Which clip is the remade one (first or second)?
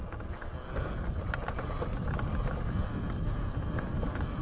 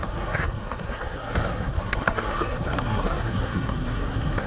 second